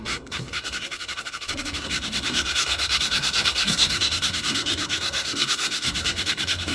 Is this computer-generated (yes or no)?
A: yes